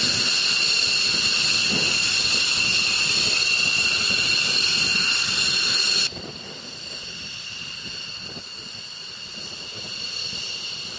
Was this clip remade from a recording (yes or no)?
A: no